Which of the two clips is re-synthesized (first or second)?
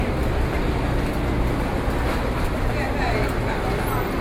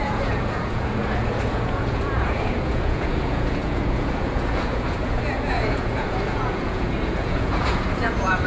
second